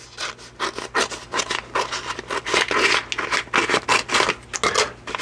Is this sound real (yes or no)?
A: yes